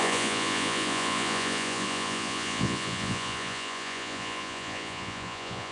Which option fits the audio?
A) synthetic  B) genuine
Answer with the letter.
A